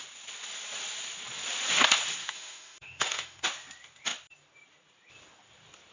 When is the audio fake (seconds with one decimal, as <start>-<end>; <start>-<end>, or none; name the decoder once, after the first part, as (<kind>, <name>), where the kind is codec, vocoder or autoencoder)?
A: 2.2-3.4 (autoencoder, DAC-VAE)